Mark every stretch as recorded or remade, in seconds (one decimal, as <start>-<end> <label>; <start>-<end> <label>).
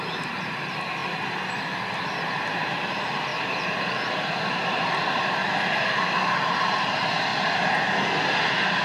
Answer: 0.0-1.0 remade; 1.0-2.3 recorded; 2.3-3.3 remade; 3.3-4.5 recorded; 4.5-5.4 remade; 5.4-6.5 recorded; 6.5-7.3 remade; 7.3-8.4 recorded; 8.4-8.8 remade